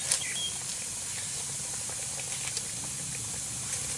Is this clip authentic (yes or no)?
yes